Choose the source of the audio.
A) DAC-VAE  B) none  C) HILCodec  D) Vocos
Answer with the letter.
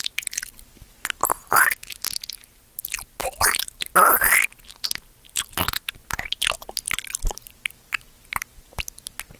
B